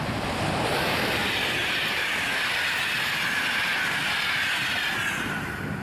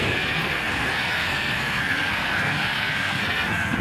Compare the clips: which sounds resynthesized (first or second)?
second